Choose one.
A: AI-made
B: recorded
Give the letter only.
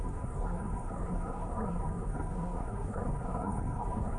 A